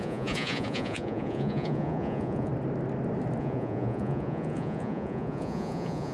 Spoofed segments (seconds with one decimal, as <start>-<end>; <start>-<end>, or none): 0.0-2.5; 3.4-6.1

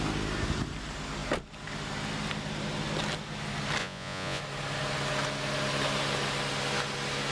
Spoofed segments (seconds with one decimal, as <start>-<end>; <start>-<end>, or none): 3.8-4.4

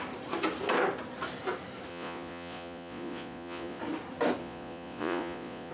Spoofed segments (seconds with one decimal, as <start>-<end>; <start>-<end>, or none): 1.9-3.8; 4.4-5.7

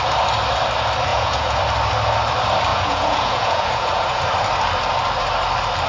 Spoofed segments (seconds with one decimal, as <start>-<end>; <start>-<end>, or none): 1.1-1.6; 2.7-4.2